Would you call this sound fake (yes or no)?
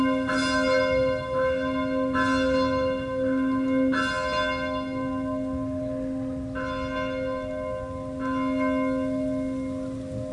no